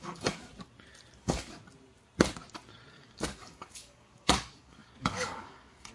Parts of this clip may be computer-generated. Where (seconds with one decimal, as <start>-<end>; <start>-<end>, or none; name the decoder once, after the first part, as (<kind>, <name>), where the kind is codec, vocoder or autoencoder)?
0.0-0.5 (codec, DAC); 1.2-1.6; 2.9-5.9